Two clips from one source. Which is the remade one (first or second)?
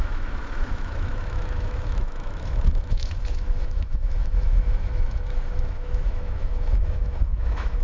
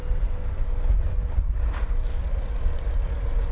first